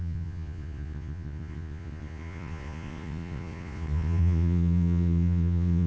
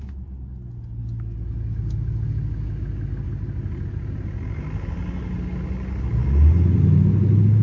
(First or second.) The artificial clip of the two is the first